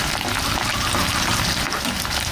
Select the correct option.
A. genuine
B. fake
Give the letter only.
A